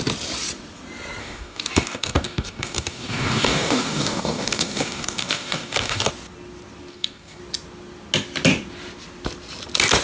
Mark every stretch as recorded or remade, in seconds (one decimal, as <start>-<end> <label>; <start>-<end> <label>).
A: 0.0-1.2 recorded; 1.2-6.1 remade; 6.1-6.9 recorded; 6.9-7.4 remade; 7.4-10.0 recorded